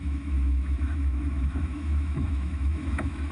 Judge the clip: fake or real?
fake